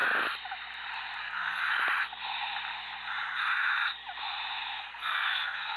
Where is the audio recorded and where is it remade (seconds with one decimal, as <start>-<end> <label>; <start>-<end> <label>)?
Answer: 0.0-1.2 recorded; 1.2-1.6 remade; 1.6-4.8 recorded; 4.8-5.8 remade